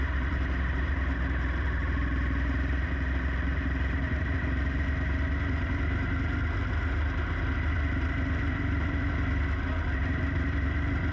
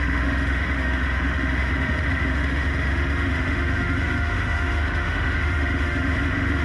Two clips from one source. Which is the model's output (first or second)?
second